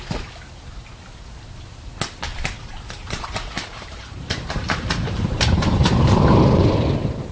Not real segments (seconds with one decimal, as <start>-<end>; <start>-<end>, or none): 2.3-6.4